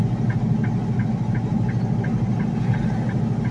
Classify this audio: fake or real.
real